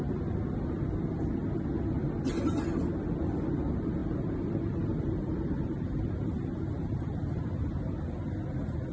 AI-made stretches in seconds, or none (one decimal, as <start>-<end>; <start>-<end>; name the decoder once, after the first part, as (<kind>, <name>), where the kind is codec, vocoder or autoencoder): 4.0-7.5 (vocoder, BigVGAN v2)